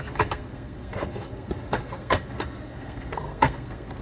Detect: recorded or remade remade